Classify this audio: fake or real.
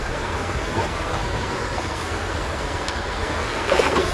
fake